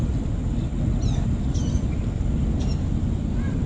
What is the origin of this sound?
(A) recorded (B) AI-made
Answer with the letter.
A